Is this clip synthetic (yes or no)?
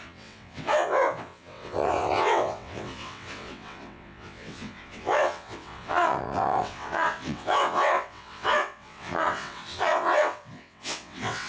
yes